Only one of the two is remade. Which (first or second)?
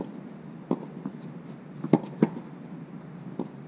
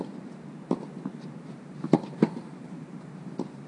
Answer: second